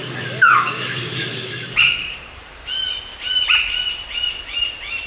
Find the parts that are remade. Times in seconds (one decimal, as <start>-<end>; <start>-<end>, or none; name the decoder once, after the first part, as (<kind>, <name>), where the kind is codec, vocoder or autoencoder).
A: 0.0-2.5 (codec, DAC)